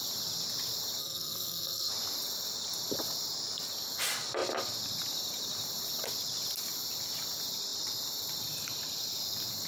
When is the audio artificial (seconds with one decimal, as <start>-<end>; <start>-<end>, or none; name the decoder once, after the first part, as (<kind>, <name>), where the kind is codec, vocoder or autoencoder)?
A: 1.0-1.9 (codec, SNAC)